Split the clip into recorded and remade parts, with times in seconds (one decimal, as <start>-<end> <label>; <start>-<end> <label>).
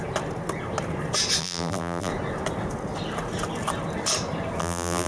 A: 0.0-1.4 recorded; 1.4-2.1 remade; 2.1-4.6 recorded; 4.6-5.1 remade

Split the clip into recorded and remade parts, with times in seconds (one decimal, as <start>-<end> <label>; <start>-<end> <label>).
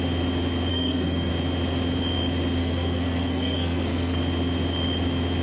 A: 0.0-0.7 recorded; 0.7-1.3 remade; 1.3-2.6 recorded; 2.6-4.2 remade; 4.2-5.4 recorded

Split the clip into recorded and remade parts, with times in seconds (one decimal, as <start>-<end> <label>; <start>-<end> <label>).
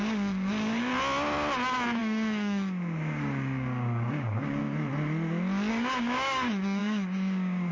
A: 0.0-0.9 remade; 0.9-2.0 recorded; 2.0-4.6 remade; 4.6-5.7 recorded; 5.7-7.7 remade